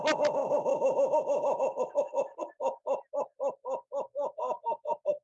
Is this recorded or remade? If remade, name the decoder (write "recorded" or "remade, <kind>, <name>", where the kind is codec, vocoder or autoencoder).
recorded